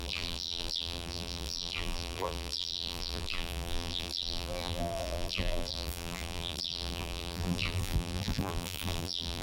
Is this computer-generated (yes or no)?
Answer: yes